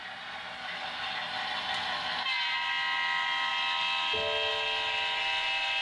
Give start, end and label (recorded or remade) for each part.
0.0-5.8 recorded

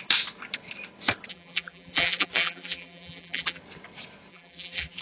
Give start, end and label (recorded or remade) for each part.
0.0-1.3 recorded; 1.3-3.6 remade; 3.6-4.3 recorded; 4.3-5.0 remade

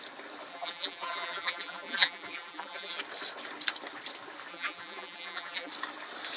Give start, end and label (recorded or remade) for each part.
0.0-0.5 recorded; 0.5-3.0 remade; 3.0-4.5 recorded; 4.5-5.7 remade; 5.7-6.4 recorded

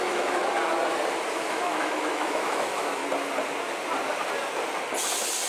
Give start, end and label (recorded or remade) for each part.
0.0-0.4 remade; 0.4-1.3 recorded; 1.3-3.0 remade; 3.0-5.5 recorded